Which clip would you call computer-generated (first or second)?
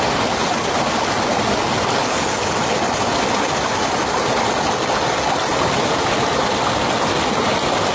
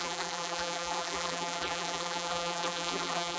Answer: second